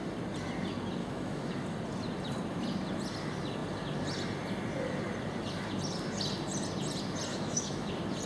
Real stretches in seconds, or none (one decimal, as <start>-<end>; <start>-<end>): 0.0-1.0; 1.5-7.3; 7.9-8.3